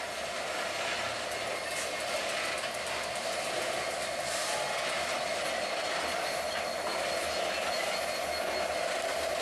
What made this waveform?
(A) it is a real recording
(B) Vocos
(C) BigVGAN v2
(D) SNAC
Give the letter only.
A